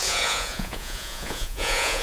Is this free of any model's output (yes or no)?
no